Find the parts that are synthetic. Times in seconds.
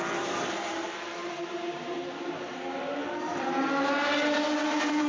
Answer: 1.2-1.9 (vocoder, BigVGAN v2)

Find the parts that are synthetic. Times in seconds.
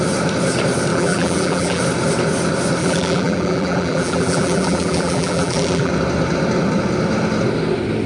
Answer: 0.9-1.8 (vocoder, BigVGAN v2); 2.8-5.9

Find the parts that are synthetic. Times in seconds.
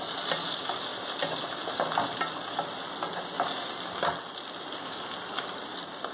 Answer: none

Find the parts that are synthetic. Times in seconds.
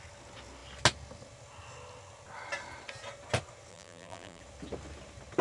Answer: 3.7-4.4 (vocoder, BigVGAN v2)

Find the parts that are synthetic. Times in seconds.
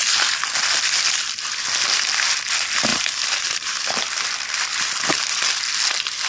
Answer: 0.0-0.5 (vocoder, BigVGAN v2); 2.9-3.7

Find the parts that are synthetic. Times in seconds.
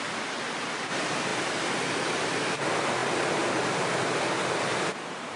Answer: none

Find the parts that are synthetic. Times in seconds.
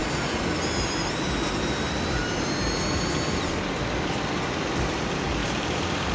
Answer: 5.4-6.1 (vocoder, BigVGAN v2)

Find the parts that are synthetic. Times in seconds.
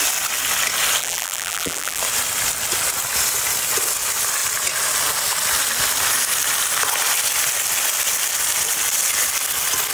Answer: 1.0-2.0 (vocoder, BigVGAN v2)